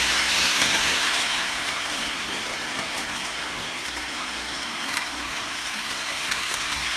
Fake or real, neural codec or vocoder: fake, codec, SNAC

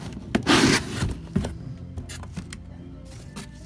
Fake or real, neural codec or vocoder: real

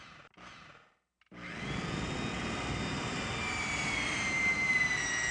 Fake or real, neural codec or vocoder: real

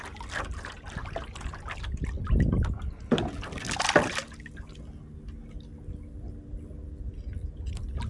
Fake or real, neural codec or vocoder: real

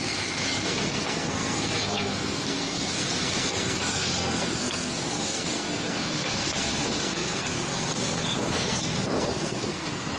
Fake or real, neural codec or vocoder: fake, codec, SNAC